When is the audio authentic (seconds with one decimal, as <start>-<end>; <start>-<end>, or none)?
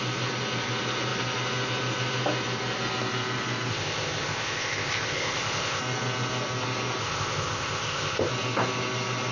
0.0-3.7; 5.8-7.0; 8.3-9.3